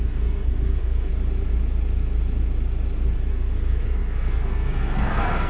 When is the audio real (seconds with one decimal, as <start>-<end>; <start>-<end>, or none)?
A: 1.1-3.3